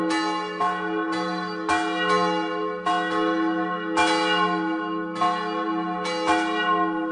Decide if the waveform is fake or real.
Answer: real